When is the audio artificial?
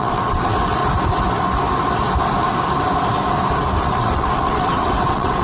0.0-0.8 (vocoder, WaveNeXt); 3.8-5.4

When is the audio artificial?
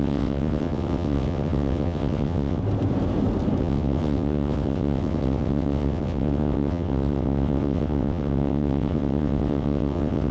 0.0-2.6 (vocoder, WaveNeXt); 3.6-10.3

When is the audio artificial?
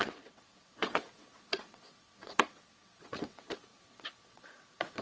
0.0-5.0 (vocoder, WaveNeXt)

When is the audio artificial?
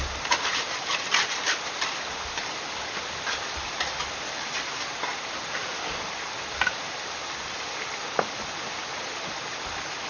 none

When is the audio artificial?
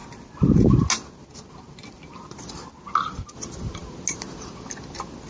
none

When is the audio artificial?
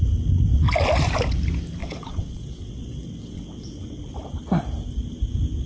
1.8-4.0 (vocoder, WaveNeXt)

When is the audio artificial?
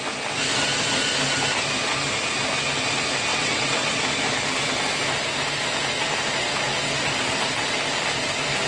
3.3-4.0 (vocoder, WaveNeXt)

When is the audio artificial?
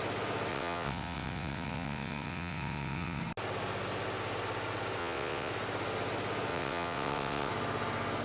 0.5-3.2 (vocoder, WaveNeXt); 5.0-5.5; 6.5-7.5